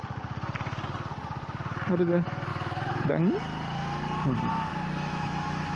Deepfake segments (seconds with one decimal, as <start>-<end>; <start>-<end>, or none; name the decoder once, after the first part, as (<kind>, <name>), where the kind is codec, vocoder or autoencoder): 4.7-5.8 (autoencoder, DAC-VAE)

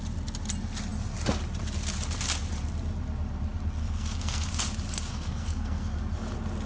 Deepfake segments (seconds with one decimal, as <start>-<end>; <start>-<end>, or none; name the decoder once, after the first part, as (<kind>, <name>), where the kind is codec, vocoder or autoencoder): 3.8-4.5 (codec, SNAC); 5.1-6.0

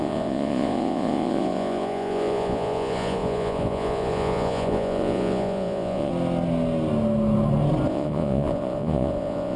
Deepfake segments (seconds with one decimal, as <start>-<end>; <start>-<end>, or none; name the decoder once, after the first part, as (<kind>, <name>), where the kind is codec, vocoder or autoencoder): 0.0-6.1 (vocoder, Vocos); 7.9-9.6